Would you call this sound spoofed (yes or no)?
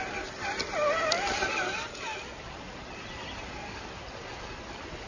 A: no